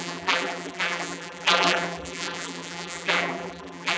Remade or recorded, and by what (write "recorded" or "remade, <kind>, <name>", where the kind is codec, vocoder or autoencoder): remade, vocoder, BigVGAN v2